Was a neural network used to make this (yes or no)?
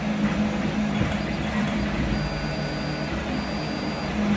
no